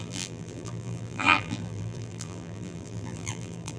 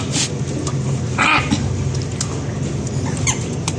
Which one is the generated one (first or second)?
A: first